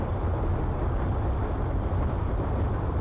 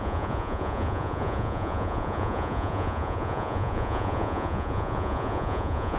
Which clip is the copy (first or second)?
second